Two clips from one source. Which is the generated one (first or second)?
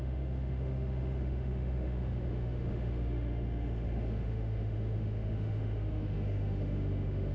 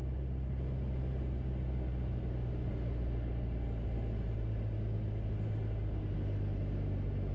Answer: first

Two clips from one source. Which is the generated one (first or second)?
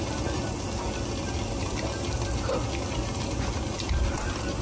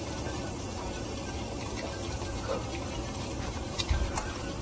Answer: second